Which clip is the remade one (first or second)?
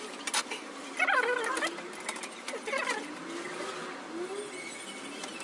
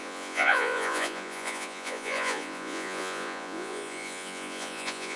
second